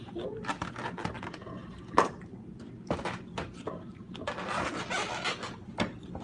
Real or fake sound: real